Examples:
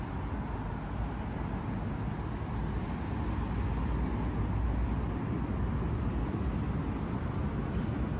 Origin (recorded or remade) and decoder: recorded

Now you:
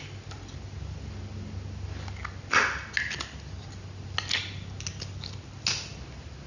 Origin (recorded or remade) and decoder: recorded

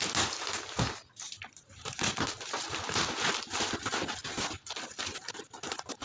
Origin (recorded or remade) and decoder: recorded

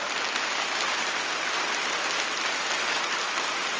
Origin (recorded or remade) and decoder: recorded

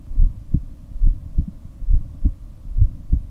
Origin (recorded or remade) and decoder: recorded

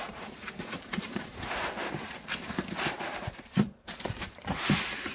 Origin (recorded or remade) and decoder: remade, vocoder, BigVGAN v2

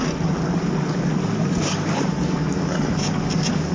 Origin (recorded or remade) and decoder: recorded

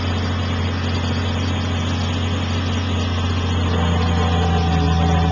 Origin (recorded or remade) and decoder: recorded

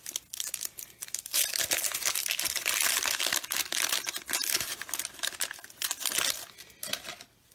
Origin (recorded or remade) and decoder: recorded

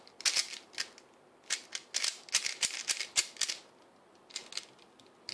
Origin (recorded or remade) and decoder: recorded